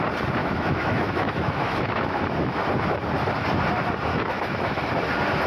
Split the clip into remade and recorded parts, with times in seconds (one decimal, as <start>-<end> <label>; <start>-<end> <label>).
0.0-0.4 recorded; 0.4-2.6 remade; 2.6-4.1 recorded; 4.1-4.8 remade; 4.8-5.5 recorded